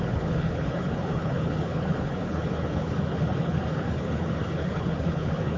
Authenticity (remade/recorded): remade